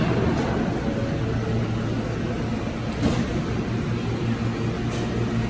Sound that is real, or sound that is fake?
real